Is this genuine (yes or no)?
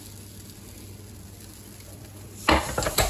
yes